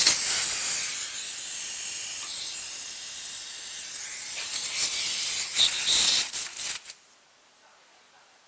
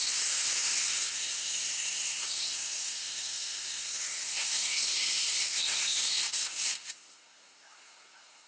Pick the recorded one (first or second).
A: first